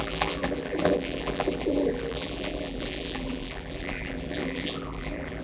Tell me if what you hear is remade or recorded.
remade